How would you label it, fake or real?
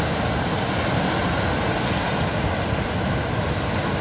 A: real